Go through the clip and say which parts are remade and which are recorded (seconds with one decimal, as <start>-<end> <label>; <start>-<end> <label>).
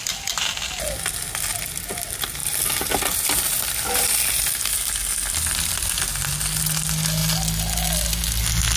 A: 0.0-2.4 recorded; 2.4-4.0 remade; 4.0-8.8 recorded